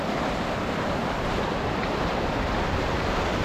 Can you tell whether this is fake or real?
real